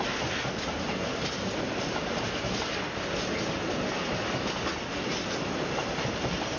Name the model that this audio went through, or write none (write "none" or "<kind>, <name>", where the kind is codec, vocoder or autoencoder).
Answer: none